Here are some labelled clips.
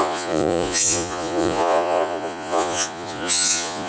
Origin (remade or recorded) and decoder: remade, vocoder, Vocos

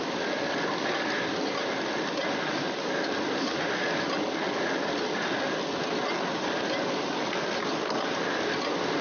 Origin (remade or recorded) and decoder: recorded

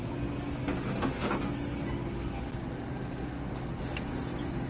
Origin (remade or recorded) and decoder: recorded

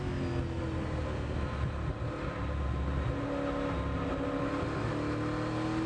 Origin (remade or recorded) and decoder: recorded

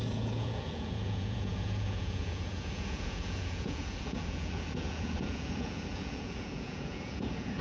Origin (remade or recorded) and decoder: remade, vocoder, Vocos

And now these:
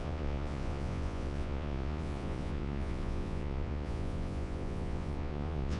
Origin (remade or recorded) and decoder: remade, vocoder, Vocos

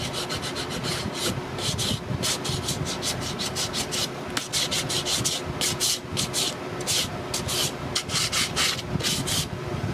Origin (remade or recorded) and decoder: recorded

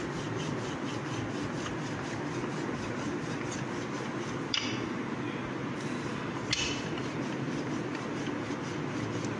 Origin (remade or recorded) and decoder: recorded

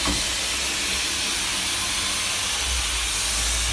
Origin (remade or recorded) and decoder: recorded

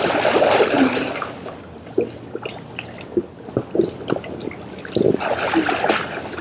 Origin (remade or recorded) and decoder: recorded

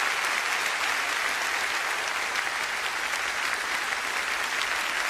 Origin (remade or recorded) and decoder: recorded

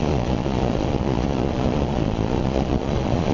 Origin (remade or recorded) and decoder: remade, vocoder, Vocos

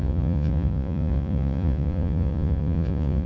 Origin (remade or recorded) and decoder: remade, vocoder, Vocos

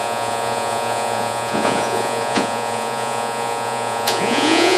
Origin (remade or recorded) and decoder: remade, vocoder, Vocos